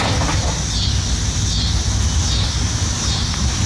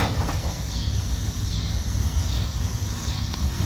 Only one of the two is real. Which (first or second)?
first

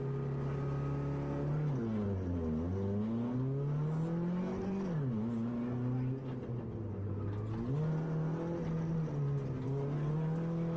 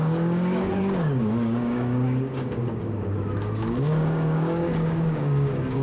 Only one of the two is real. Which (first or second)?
first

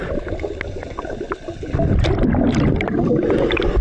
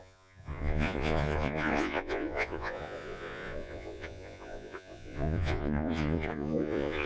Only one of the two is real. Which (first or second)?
first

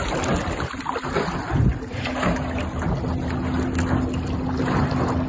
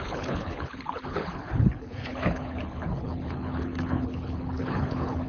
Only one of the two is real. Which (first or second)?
first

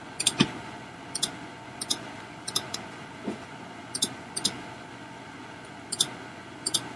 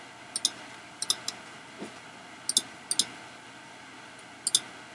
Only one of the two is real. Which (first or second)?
second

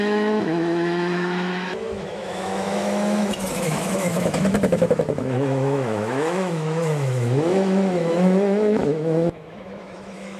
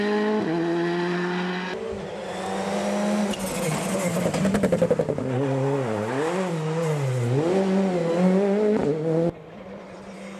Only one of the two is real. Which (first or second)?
second